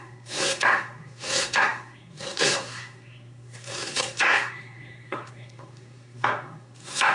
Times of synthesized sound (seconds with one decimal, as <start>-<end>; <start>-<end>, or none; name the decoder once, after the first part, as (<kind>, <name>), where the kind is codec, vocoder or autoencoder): 0.0-7.1 (codec, SNAC)